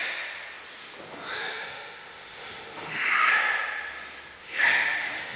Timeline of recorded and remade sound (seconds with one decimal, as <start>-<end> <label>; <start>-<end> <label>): 0.0-1.4 recorded; 1.4-3.3 remade; 3.3-4.4 recorded; 4.4-5.4 remade